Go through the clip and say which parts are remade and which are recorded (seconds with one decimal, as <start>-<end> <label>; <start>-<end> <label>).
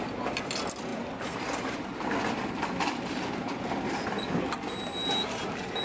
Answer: 0.0-5.8 recorded